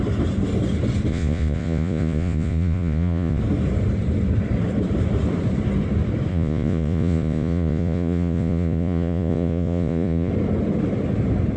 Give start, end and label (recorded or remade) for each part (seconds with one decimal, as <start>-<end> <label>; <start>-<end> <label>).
0.0-1.1 recorded; 1.1-3.4 remade; 3.4-6.3 recorded; 6.3-10.3 remade; 10.3-11.6 recorded